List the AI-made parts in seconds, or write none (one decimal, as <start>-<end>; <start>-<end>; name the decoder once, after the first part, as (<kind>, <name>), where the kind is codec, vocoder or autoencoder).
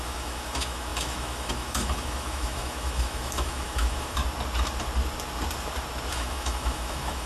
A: 0.0-4.2 (autoencoder, DAC-VAE); 6.1-7.3